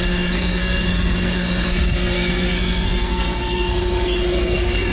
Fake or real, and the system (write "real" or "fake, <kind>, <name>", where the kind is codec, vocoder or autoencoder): fake, codec, SNAC